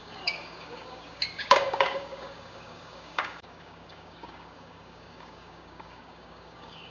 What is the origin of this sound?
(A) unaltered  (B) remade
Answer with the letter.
B